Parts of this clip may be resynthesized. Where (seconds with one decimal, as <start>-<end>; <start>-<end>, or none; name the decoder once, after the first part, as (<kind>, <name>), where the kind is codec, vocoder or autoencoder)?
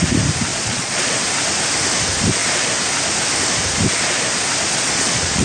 0.5-1.2 (vocoder, Vocos); 4.7-5.4